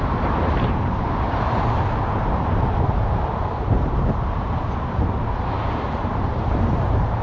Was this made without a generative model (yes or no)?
no